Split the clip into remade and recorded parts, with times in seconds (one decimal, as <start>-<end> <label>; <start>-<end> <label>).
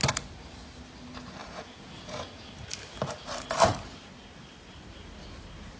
0.0-1.4 recorded; 1.4-2.5 remade; 2.5-5.8 recorded